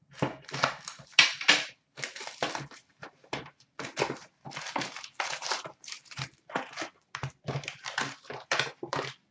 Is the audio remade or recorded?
recorded